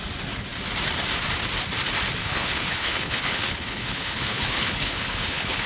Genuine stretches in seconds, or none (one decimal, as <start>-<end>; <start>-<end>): 0.0-2.2